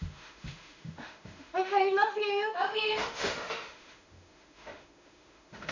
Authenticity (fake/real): fake